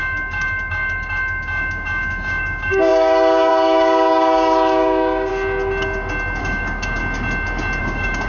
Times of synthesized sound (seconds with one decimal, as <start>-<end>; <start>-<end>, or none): 0.0-5.3; 6.4-7.0; 7.8-8.3